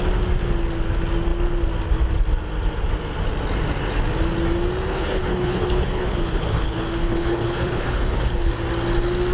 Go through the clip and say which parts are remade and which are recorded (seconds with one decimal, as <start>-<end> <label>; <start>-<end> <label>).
0.0-4.9 recorded; 4.9-8.5 remade; 8.5-9.3 recorded